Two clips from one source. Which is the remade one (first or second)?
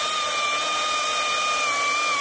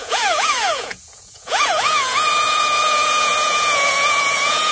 second